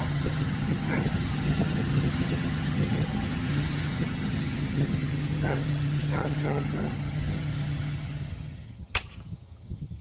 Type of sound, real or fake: fake